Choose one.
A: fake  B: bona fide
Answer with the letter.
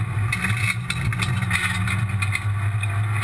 B